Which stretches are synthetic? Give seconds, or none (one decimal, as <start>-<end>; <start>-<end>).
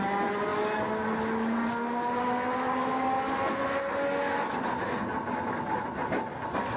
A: none